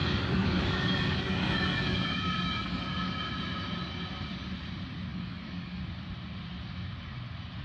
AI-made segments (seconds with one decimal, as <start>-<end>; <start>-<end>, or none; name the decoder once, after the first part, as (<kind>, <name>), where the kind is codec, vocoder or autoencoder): 0.0-3.3 (codec, DAC); 5.1-5.8